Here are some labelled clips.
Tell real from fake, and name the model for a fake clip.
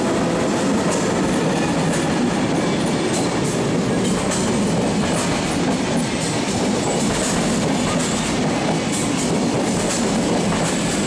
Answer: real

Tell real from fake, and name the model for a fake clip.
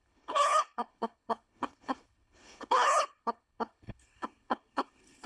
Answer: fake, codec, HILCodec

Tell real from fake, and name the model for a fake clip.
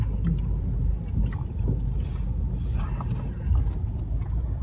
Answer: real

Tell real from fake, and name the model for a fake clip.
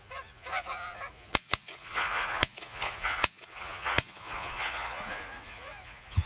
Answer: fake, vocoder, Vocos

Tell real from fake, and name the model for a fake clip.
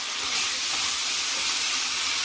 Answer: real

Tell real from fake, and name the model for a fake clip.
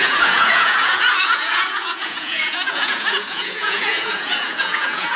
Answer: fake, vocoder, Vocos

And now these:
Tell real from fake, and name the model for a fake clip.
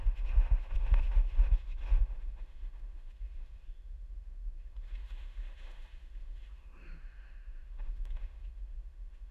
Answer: fake, autoencoder, DAC-VAE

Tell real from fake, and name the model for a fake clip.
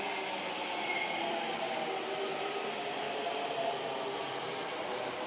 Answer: real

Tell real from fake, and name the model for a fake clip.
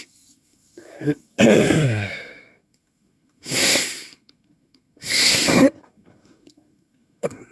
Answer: fake, codec, SNAC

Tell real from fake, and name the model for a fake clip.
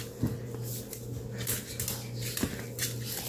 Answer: real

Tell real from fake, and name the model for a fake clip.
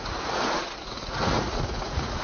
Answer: fake, vocoder, Vocos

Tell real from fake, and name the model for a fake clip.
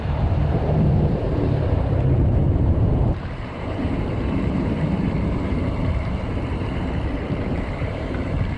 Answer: fake, vocoder, BigVGAN v2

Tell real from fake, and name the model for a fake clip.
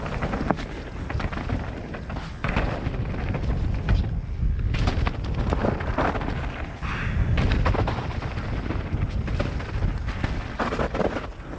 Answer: real